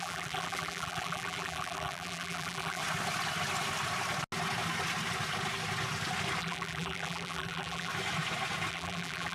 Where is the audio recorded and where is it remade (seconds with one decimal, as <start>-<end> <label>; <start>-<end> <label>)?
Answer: 0.0-2.8 remade; 2.8-6.4 recorded; 6.4-7.9 remade; 7.9-8.7 recorded; 8.7-9.3 remade